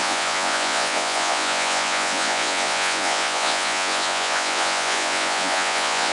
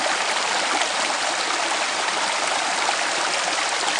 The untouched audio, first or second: second